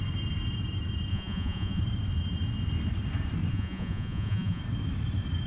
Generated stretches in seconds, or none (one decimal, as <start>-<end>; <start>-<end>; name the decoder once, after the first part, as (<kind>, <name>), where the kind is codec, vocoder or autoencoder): 1.1-1.8 (vocoder, Vocos); 3.5-4.6